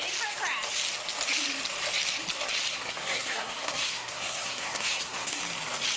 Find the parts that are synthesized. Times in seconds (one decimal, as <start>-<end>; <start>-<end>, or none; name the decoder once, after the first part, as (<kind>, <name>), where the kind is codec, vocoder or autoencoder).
2.7-5.4 (codec, SNAC)